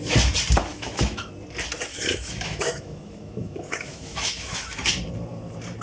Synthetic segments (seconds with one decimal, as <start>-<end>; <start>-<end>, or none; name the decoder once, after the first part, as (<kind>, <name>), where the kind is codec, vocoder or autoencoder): 0.7-1.3 (autoencoder, DAC-VAE); 1.9-4.6